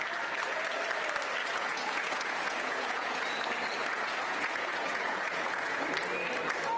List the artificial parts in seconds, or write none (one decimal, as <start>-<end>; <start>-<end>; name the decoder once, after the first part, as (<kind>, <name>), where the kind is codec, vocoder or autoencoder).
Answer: 1.4-3.2 (vocoder, Vocos); 3.8-5.8